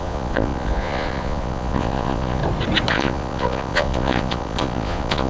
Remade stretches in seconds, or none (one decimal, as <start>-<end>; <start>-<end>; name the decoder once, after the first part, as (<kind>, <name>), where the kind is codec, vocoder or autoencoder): 0.0-2.4 (vocoder, Vocos); 2.9-5.3